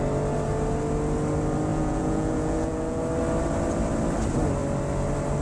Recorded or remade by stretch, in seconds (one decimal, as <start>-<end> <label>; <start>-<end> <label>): 0.0-1.7 recorded; 1.7-3.0 remade; 3.0-5.4 recorded